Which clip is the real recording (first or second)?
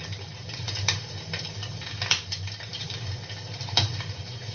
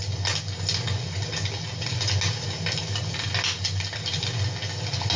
second